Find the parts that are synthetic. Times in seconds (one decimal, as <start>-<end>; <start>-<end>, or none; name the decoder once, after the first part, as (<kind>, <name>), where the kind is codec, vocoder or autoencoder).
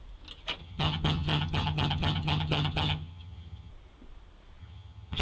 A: 0.6-3.7 (vocoder, HiFi-GAN); 4.6-5.2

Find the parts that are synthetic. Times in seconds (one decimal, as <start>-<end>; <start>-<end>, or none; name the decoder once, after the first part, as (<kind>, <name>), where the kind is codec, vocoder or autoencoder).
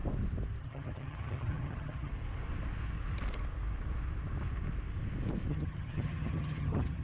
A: 0.6-2.1 (vocoder, HiFi-GAN); 5.5-7.0